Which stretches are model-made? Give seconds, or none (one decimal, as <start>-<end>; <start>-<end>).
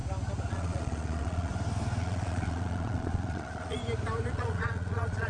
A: 0.5-1.5; 2.0-3.8; 4.3-5.3